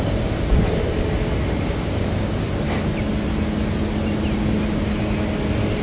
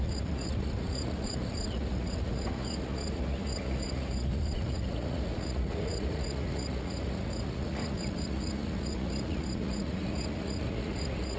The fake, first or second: second